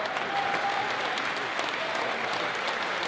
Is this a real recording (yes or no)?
yes